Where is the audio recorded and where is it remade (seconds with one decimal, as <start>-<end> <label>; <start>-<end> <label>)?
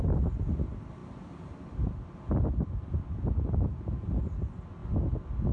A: 0.0-5.5 recorded